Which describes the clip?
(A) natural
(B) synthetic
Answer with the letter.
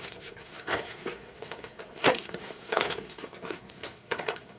B